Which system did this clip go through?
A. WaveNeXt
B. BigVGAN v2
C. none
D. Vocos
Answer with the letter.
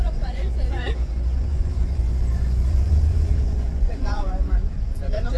D